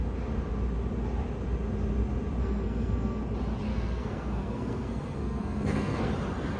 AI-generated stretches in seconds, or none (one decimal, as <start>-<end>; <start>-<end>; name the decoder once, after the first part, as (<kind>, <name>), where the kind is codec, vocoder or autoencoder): 2.4-3.2 (codec, SNAC); 3.7-6.1